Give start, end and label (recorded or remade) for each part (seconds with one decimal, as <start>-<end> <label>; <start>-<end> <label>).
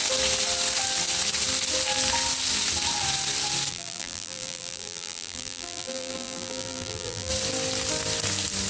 0.0-3.7 recorded; 3.7-7.3 remade; 7.3-8.7 recorded